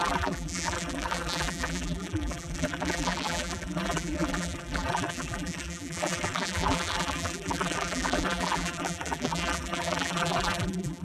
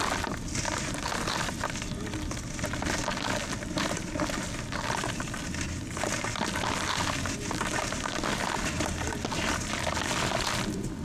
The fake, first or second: first